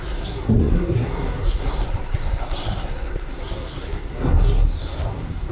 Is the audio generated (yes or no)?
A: yes